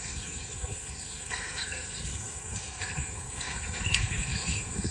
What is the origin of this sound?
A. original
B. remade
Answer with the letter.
B